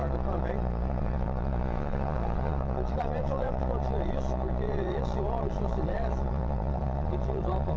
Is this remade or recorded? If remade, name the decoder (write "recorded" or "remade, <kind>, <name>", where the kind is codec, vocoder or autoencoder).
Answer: remade, vocoder, Vocos